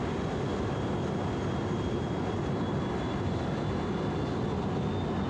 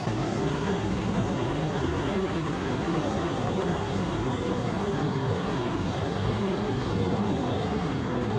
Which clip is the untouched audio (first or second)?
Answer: first